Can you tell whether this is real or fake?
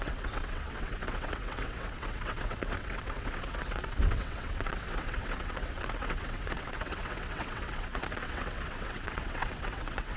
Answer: fake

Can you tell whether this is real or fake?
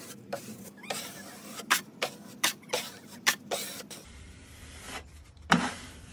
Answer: fake